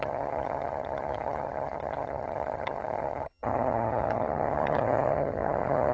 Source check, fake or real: fake